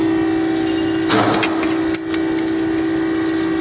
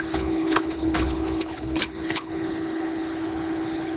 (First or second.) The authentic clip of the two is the first